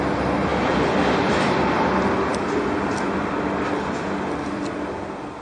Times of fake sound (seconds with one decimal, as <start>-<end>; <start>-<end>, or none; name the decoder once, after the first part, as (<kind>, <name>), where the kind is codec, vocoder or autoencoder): none